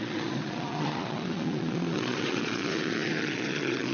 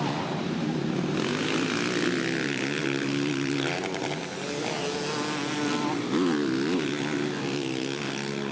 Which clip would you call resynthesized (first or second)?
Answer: first